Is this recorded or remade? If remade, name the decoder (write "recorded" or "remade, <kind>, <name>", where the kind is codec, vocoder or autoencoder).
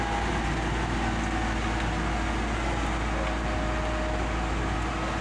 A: recorded